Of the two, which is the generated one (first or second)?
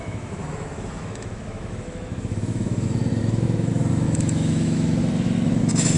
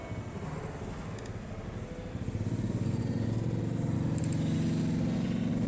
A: first